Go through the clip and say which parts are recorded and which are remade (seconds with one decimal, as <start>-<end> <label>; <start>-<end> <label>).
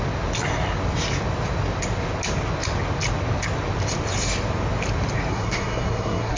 0.0-5.3 recorded; 5.3-6.4 remade